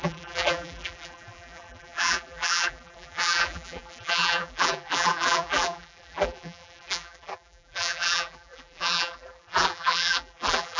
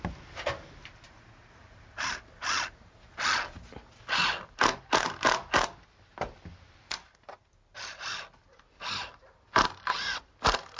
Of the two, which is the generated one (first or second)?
first